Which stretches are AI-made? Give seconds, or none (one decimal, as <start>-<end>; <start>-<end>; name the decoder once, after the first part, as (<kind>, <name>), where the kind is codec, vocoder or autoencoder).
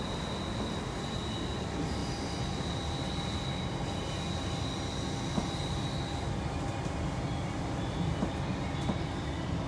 none